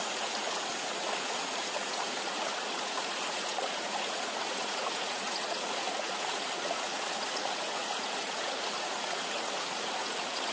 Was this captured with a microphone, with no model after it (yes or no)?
no